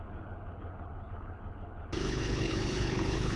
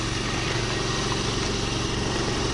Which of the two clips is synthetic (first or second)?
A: first